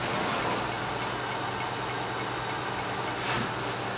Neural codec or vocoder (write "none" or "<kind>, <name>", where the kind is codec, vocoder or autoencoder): none